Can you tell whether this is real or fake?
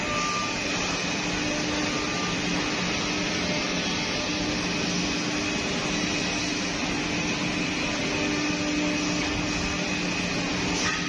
real